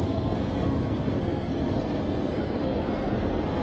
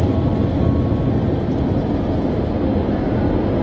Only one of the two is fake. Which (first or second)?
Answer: first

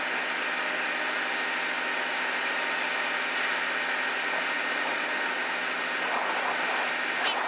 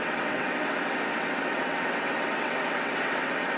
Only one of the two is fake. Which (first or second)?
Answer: second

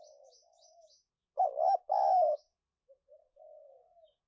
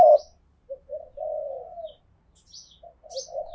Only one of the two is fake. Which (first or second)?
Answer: first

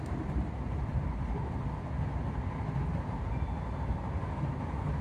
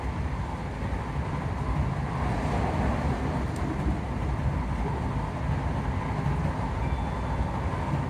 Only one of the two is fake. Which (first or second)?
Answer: first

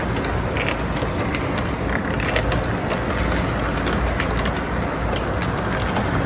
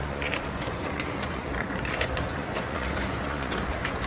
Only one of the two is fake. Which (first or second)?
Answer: second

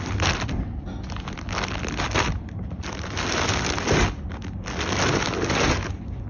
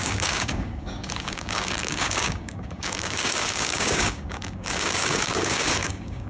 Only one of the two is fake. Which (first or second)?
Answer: second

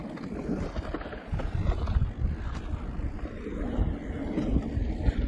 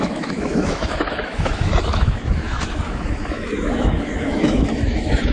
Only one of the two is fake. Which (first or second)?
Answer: second